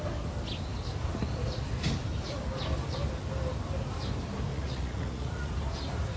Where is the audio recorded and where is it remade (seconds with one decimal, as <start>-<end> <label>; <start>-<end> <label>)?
0.0-4.5 recorded; 4.5-5.5 remade; 5.5-6.2 recorded